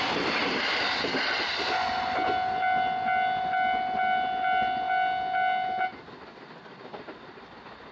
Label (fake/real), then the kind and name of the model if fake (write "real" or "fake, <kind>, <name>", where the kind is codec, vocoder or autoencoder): real